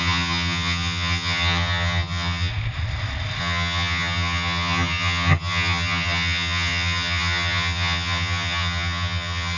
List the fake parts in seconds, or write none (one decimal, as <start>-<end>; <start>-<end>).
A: 0.0-2.5; 3.4-9.6